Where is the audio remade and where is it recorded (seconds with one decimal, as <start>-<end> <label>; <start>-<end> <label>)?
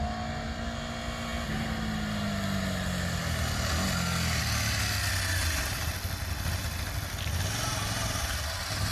0.0-8.9 recorded